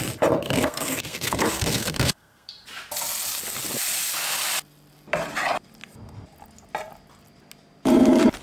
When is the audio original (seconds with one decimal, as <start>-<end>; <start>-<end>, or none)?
0.0-0.4; 2.5-8.4